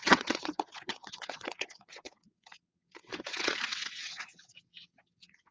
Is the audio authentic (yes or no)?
no